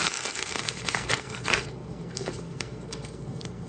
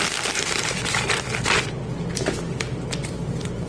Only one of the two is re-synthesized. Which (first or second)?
first